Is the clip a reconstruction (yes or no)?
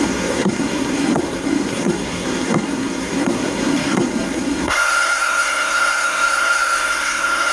yes